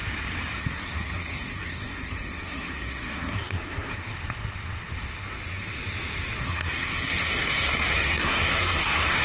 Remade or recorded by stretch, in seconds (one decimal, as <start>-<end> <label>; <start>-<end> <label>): 0.0-0.6 recorded; 0.6-4.1 remade; 4.1-6.4 recorded; 6.4-9.2 remade